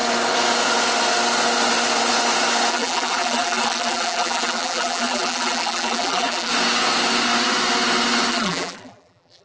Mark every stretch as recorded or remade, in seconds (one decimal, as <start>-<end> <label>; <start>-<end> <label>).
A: 0.0-2.7 recorded; 2.7-6.5 remade; 6.5-8.3 recorded; 8.3-9.4 remade